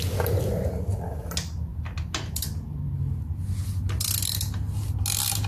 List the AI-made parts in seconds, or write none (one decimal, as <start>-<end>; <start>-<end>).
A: none